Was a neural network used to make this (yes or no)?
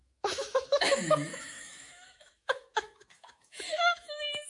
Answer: yes